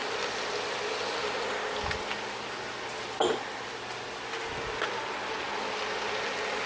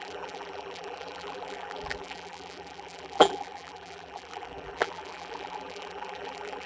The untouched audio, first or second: first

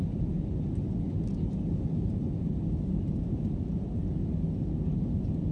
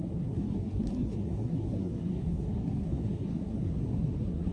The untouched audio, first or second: first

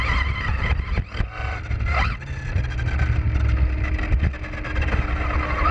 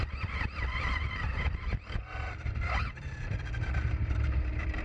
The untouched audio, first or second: first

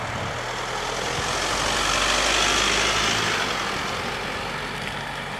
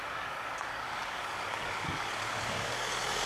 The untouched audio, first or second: first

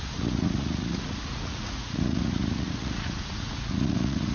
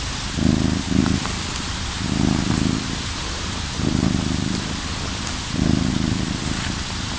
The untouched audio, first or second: second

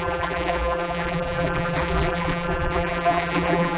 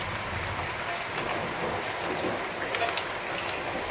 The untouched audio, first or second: second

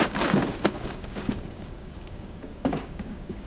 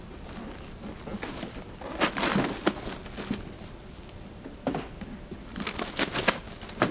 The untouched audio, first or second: second